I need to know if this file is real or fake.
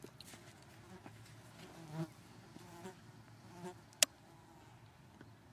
real